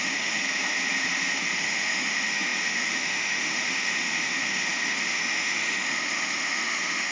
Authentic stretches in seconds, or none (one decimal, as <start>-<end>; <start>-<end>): 0.4-1.3

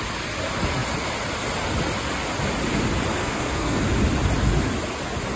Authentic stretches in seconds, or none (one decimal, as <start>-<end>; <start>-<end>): 0.0-3.2; 3.8-5.4